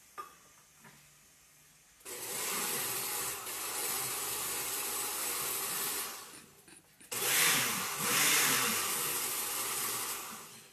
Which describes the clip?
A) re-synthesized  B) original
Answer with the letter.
B